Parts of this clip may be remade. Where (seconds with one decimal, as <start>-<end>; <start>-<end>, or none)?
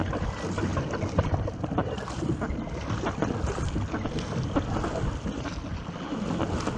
none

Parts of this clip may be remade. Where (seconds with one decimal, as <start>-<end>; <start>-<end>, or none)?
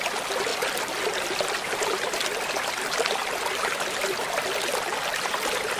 none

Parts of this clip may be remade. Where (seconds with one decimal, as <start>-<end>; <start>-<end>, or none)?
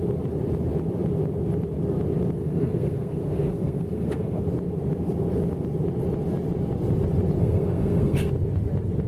2.4-4.4; 7.4-8.3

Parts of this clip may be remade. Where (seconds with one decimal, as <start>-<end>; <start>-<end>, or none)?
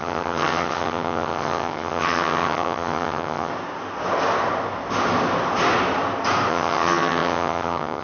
0.0-3.5; 6.5-8.0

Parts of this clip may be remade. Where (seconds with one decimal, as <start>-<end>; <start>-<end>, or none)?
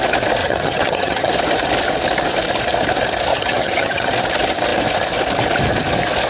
0.4-1.3; 3.3-4.1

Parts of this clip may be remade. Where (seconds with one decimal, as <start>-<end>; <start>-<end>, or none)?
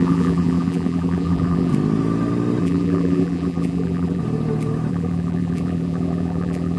0.0-1.7; 2.6-4.2; 4.9-6.8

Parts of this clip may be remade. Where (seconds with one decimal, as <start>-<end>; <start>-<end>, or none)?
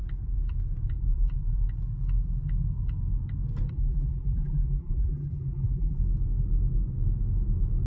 3.7-6.0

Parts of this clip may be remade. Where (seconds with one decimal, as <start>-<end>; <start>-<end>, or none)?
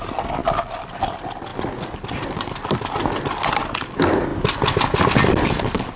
none